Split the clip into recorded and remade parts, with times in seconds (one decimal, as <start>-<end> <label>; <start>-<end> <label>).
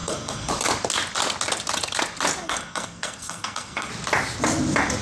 0.0-0.5 remade; 0.5-2.4 recorded; 2.4-3.9 remade; 3.9-5.0 recorded